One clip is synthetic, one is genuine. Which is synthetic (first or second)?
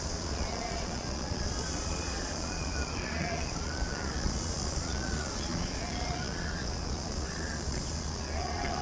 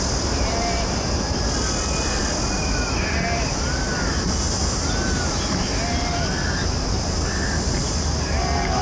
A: first